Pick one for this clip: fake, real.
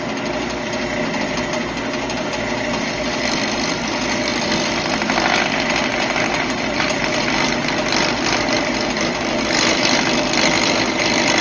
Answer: real